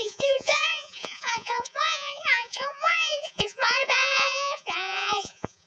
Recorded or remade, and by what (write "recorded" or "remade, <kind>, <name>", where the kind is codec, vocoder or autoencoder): remade, vocoder, Vocos